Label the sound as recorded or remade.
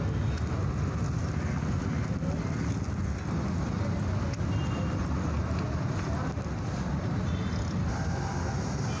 recorded